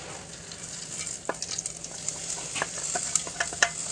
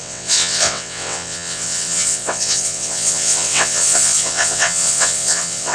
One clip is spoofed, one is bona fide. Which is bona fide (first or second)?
first